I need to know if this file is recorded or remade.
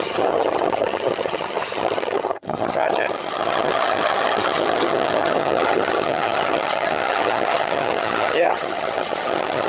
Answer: remade